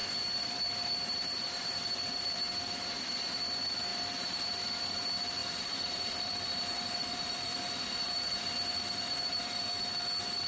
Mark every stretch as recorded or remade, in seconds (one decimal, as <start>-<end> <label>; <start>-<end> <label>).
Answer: 0.0-3.1 remade; 3.1-3.9 recorded; 3.9-4.5 remade; 4.5-5.4 recorded; 5.4-9.6 remade; 9.6-10.5 recorded